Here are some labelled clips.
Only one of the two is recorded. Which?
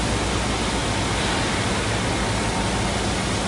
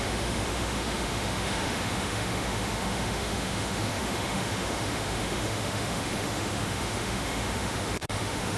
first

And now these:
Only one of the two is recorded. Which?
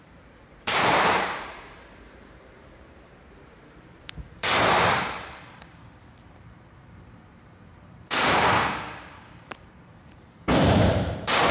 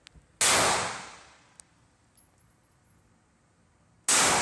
second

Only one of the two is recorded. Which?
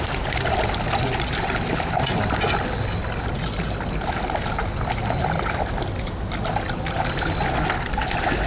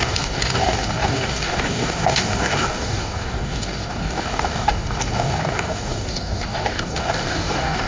first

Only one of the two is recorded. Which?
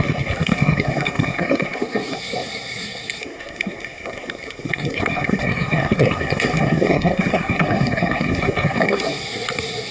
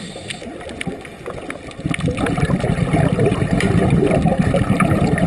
second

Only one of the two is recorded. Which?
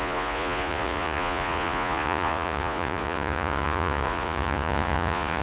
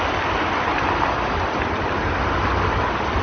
second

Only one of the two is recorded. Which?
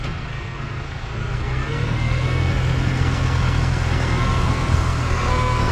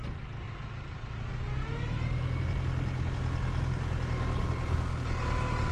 second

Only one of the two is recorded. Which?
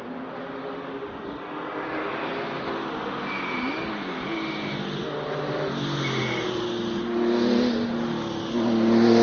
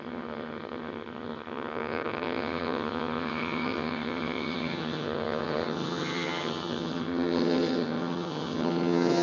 first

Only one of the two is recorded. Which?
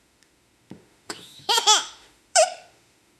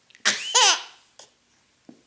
second